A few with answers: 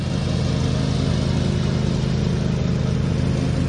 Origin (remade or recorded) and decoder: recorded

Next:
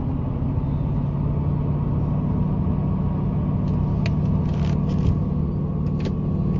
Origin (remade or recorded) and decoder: recorded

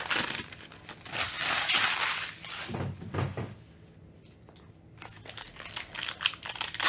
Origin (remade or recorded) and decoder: recorded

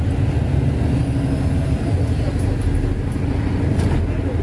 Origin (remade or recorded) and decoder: recorded